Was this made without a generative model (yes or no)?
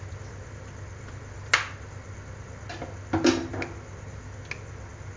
yes